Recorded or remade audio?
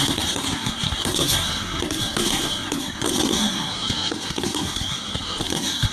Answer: remade